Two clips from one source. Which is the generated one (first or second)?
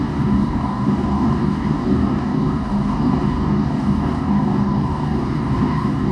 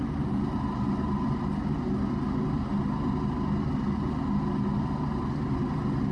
first